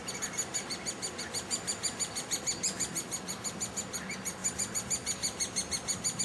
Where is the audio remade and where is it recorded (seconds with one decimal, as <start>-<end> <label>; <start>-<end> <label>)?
0.0-6.2 recorded